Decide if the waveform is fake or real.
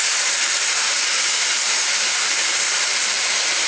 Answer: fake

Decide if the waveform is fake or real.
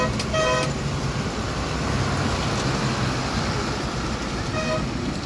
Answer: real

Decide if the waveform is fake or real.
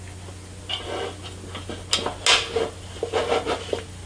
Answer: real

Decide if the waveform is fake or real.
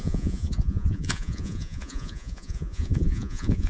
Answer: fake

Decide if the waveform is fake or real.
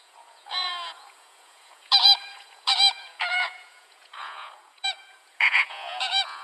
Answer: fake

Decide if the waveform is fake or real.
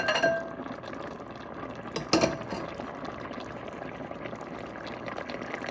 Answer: real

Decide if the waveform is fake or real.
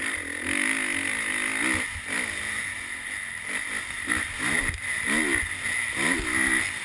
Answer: real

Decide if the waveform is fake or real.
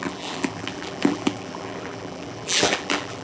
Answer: fake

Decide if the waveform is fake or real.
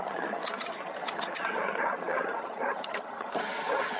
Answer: fake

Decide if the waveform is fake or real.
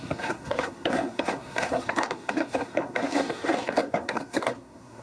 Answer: fake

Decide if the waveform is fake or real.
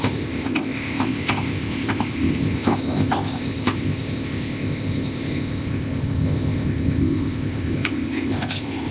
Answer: fake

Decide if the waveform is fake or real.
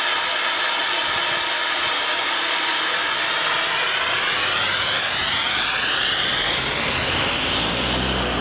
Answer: real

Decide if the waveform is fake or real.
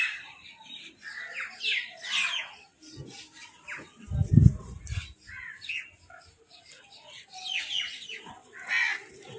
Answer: real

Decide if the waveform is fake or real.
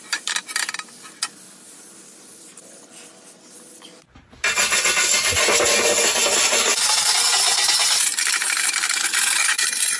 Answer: real